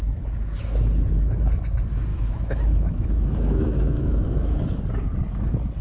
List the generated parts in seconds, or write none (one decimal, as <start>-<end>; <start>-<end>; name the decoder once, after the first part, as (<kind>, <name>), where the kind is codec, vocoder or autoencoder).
2.1-4.8 (autoencoder, DAC-VAE)